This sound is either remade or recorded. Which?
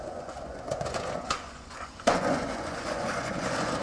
remade